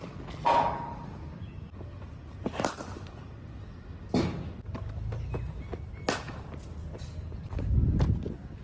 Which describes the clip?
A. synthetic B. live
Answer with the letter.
B